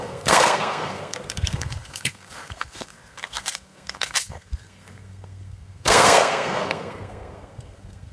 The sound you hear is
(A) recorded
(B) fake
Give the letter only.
B